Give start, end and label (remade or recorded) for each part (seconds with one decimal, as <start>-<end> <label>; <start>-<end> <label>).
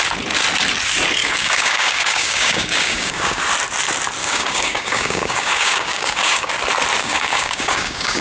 0.0-1.2 recorded; 1.2-3.4 remade; 3.4-4.2 recorded; 4.2-6.5 remade; 6.5-7.0 recorded; 7.0-8.2 remade